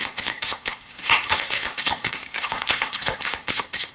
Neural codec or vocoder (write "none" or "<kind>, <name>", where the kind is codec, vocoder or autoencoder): codec, SNAC